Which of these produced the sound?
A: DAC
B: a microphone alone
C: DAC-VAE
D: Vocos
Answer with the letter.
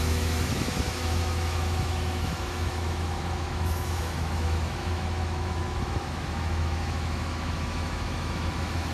C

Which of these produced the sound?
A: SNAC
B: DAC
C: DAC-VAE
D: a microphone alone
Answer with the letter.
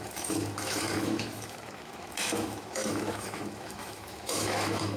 C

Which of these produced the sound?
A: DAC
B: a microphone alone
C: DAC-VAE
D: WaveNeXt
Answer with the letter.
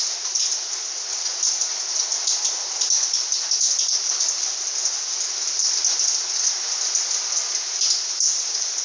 B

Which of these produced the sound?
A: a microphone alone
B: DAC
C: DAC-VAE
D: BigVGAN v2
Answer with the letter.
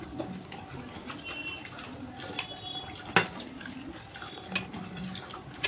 A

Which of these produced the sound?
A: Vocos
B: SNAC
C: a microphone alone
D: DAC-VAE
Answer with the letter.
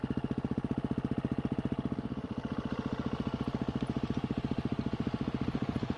C